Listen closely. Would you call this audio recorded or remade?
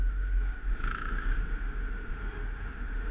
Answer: remade